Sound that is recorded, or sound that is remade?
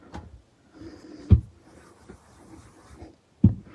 recorded